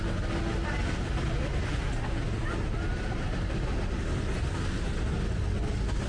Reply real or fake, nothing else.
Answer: real